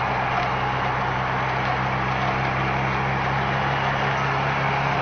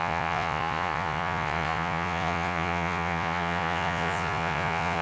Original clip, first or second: first